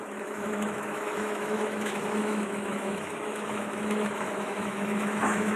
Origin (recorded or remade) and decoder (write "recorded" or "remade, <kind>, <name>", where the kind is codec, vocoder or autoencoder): remade, autoencoder, DAC-VAE